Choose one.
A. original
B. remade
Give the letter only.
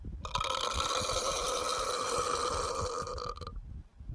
A